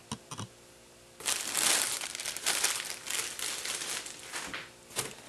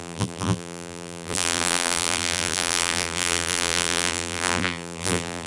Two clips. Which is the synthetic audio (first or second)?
second